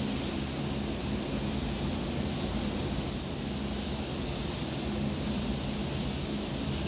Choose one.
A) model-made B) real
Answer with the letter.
B